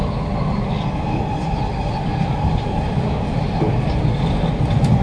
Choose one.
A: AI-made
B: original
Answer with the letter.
B